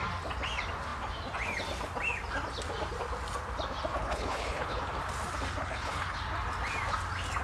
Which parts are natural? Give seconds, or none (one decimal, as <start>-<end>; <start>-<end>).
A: 0.0-4.0; 4.8-5.6; 6.2-7.4